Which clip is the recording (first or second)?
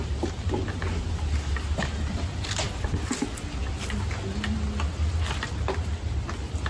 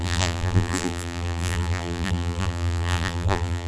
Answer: first